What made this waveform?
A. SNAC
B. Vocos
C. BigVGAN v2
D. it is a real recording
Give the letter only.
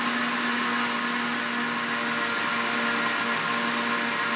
D